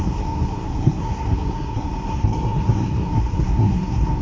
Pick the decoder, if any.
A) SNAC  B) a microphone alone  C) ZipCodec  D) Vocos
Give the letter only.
A